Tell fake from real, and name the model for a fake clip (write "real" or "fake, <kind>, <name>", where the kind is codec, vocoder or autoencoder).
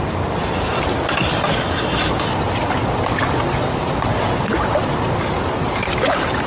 real